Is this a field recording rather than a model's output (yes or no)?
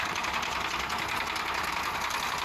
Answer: yes